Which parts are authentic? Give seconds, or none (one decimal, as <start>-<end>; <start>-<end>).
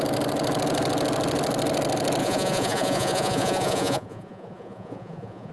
0.0-2.2